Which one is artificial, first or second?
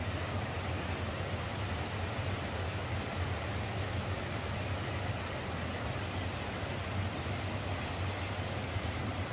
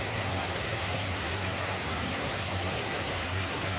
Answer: second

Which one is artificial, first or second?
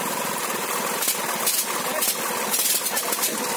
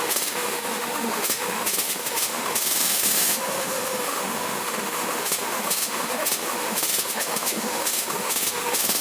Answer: second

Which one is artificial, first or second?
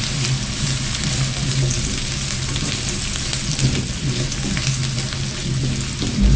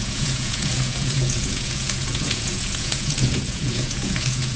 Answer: second